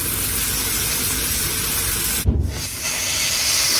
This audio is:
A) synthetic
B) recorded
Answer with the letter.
B